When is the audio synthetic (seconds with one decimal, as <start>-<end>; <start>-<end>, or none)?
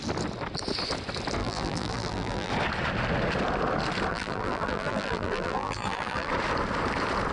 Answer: 1.4-2.5; 4.1-6.3